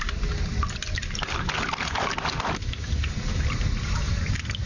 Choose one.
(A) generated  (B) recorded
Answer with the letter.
B